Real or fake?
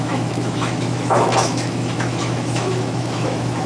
fake